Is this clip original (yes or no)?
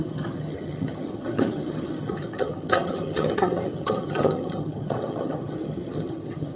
no